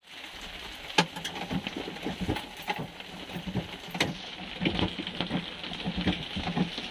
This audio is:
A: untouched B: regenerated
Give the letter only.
A